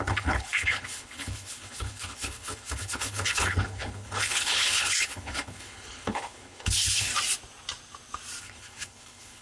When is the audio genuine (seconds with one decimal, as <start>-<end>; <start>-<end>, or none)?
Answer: 7.1-8.4